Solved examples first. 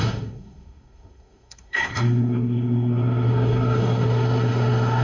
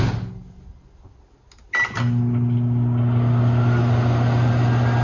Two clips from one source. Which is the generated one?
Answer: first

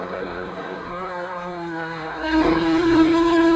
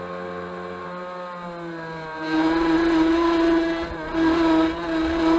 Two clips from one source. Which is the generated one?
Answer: first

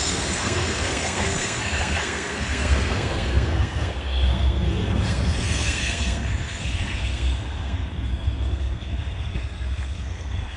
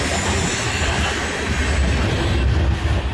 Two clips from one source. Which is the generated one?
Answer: first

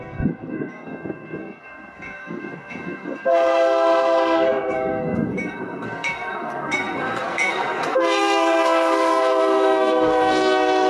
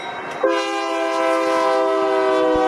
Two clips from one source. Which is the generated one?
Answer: first